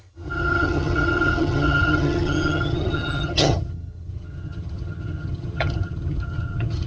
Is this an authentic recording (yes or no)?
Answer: no